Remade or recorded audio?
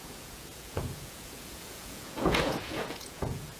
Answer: remade